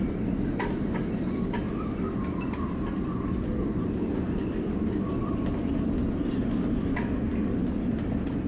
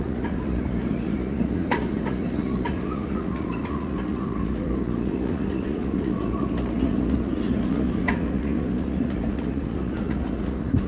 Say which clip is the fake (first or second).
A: second